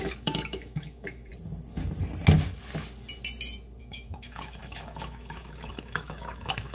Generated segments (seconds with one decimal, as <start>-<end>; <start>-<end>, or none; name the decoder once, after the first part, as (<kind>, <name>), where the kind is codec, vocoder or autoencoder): 0.0-1.3 (autoencoder, DAC-VAE); 3.8-6.7